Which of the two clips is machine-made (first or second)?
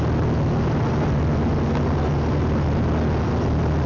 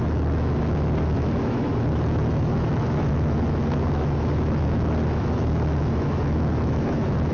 second